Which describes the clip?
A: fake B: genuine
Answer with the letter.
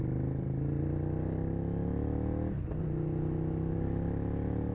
B